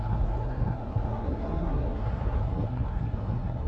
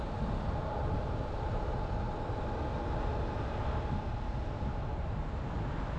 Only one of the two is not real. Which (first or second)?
first